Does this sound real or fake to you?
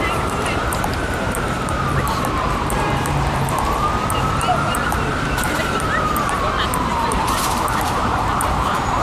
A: fake